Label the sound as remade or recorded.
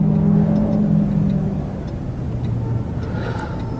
recorded